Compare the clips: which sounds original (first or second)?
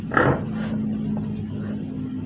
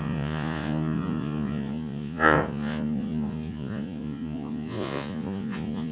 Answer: first